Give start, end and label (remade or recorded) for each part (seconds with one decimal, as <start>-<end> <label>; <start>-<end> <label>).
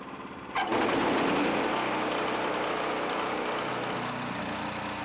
0.0-5.0 recorded